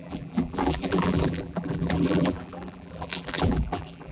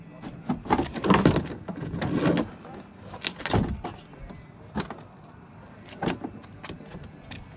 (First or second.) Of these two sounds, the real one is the second